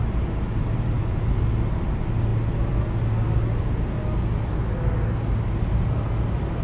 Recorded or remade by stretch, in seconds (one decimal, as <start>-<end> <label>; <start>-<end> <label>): 0.0-6.6 recorded